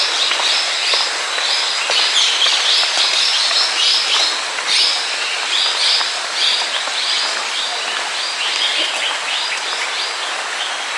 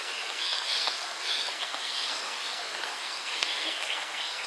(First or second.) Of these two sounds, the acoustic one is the first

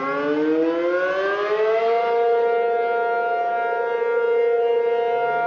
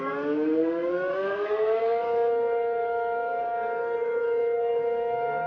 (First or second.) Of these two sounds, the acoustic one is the first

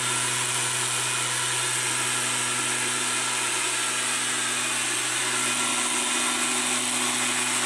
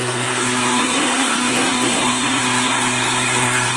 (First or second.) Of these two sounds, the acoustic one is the first